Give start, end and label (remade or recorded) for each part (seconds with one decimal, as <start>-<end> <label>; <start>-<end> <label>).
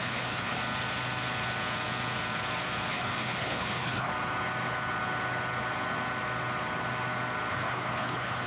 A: 0.0-0.6 remade; 0.6-2.9 recorded; 2.9-4.1 remade; 4.1-7.5 recorded; 7.5-8.5 remade